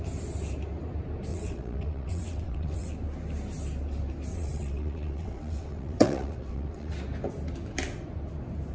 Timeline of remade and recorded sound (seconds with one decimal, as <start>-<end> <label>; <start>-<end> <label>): 0.0-1.3 recorded; 1.3-2.9 remade; 2.9-4.3 recorded; 4.3-6.9 remade; 6.9-8.7 recorded